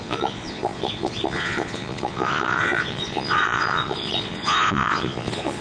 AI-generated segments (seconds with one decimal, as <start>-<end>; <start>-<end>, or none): 0.0-5.6